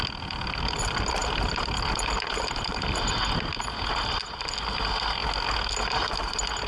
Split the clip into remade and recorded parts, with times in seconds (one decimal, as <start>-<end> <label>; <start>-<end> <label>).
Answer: 0.0-1.2 recorded; 1.2-3.1 remade; 3.1-6.7 recorded